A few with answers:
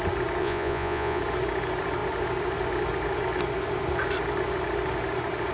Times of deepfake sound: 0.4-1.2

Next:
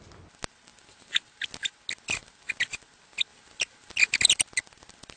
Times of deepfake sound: none

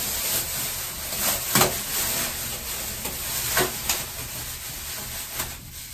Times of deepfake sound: none

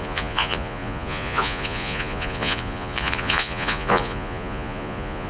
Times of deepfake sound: 0.0-5.3

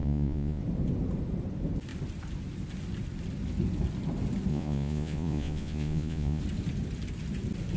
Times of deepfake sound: 0.0-0.6; 4.5-6.4